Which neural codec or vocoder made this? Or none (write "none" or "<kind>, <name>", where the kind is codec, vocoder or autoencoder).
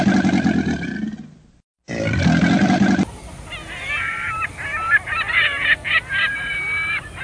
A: none